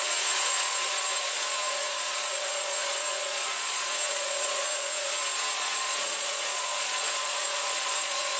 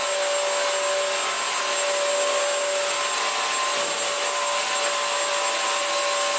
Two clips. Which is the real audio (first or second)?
second